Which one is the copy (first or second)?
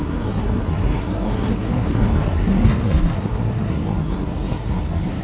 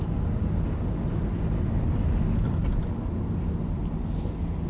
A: first